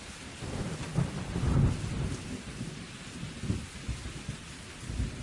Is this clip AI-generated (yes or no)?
no